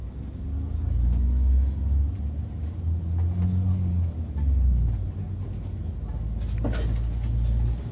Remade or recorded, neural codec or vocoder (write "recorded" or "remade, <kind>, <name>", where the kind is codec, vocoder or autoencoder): recorded